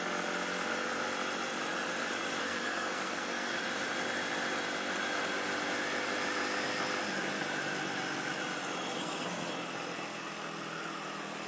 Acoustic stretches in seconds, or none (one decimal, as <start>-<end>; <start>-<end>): 0.0-2.4; 3.6-8.9; 9.5-11.5